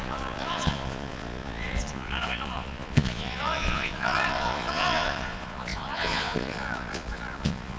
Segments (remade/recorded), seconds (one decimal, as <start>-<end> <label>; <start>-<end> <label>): 0.0-7.8 remade